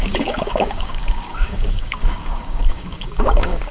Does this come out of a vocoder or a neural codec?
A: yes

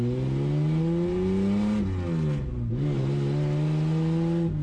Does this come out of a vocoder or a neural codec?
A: no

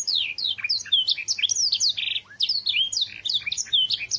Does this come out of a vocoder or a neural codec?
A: no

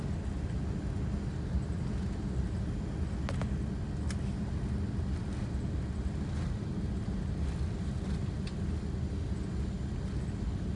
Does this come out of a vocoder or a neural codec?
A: no